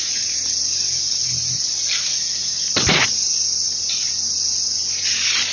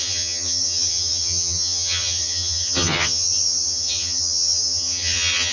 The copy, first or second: second